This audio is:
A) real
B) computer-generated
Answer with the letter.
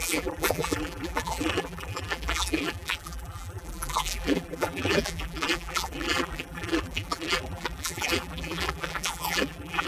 B